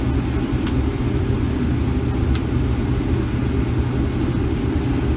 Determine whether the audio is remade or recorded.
recorded